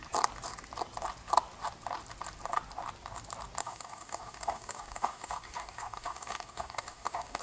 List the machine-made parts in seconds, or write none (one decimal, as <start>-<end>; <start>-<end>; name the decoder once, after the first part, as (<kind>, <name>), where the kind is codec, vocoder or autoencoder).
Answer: 3.6-7.4 (codec, DAC)